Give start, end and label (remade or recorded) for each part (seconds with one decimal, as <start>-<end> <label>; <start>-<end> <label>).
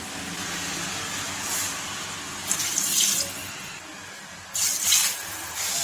0.0-5.8 recorded